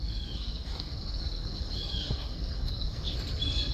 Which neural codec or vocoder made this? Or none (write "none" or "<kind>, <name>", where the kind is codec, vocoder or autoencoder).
codec, SNAC